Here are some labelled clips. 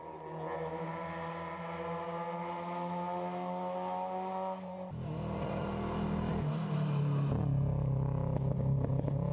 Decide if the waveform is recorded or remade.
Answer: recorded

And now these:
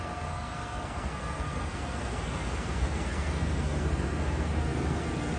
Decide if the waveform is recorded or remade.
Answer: remade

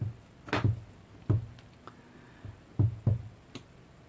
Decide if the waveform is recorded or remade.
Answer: recorded